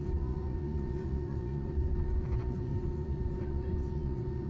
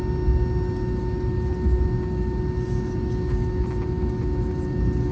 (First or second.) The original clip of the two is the second